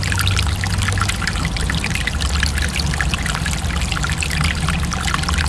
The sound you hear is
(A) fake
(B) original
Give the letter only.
B